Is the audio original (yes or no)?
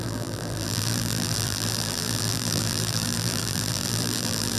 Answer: no